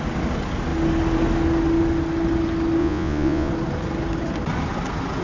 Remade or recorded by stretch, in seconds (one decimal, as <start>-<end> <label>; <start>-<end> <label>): 0.0-2.8 recorded; 2.8-3.5 remade; 3.5-5.2 recorded